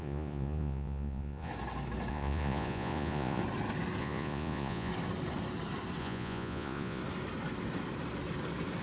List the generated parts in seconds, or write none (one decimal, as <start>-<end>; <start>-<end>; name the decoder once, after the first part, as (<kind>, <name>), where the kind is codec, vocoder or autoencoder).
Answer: 0.0-1.5 (vocoder, Vocos); 2.1-3.4; 4.0-4.9; 6.0-7.0